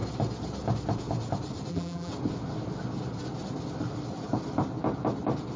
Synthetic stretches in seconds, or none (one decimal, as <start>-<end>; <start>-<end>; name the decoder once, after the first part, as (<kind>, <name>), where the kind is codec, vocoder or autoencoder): 1.7-2.1 (vocoder, BigVGAN v2)